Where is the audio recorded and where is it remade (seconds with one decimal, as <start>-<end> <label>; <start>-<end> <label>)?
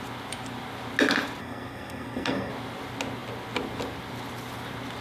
0.0-1.4 recorded; 1.4-2.5 remade; 2.5-5.0 recorded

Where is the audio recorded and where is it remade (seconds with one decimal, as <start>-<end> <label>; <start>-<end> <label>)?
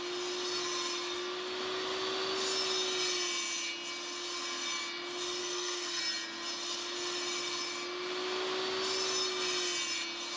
0.0-5.4 recorded; 5.4-6.0 remade; 6.0-10.4 recorded